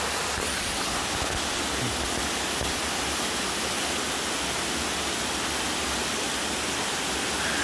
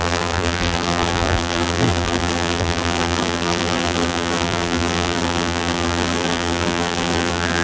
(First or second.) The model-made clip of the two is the second